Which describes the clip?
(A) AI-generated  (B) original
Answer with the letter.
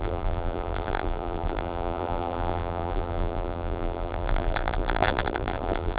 A